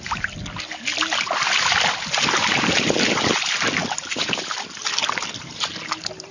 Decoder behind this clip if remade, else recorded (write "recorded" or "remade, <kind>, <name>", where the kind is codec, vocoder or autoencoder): recorded